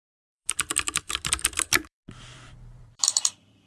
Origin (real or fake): fake